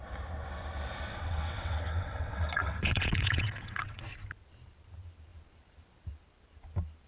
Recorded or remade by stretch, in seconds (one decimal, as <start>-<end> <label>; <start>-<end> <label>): 0.0-1.1 recorded; 1.1-4.0 remade; 4.0-7.1 recorded